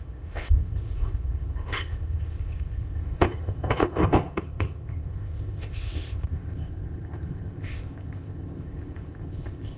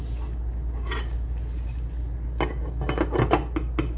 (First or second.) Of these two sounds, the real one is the second